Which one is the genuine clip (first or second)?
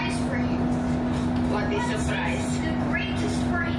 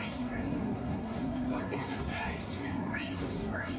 first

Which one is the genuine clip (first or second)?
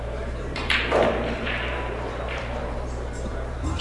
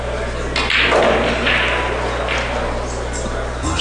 second